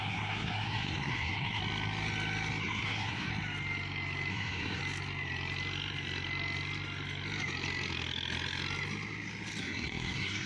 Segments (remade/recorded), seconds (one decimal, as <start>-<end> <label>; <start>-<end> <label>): 0.0-1.6 remade; 1.6-2.6 recorded; 2.6-3.3 remade; 3.3-4.3 recorded; 4.3-4.8 remade; 4.8-9.6 recorded; 9.6-10.5 remade